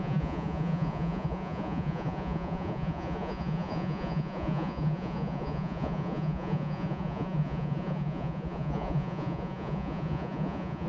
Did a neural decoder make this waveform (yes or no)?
yes